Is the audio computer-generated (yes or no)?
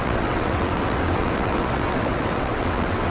yes